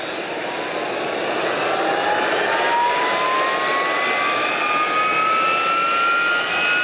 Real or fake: real